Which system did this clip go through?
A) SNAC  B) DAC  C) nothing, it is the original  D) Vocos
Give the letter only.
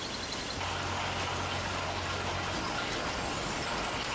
C